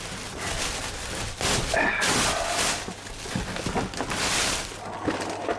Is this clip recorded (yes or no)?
yes